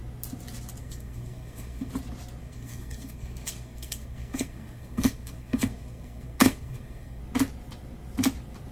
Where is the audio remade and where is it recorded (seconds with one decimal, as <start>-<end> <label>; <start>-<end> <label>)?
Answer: 0.0-0.8 recorded; 0.8-1.9 remade; 1.9-2.4 recorded; 2.4-7.2 remade; 7.2-8.7 recorded